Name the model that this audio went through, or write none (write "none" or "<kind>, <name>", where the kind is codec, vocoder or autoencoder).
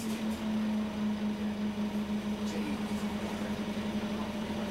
none